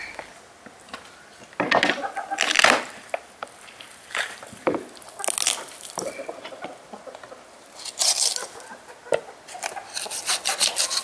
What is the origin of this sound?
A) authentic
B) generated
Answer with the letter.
A